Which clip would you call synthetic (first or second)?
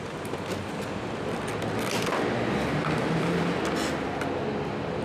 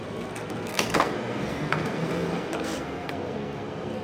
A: second